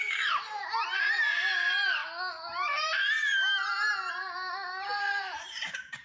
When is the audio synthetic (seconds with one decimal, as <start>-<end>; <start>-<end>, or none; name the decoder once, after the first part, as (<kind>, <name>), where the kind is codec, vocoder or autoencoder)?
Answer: 0.0-6.0 (vocoder, BigVGAN v2)